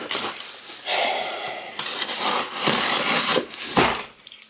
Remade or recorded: remade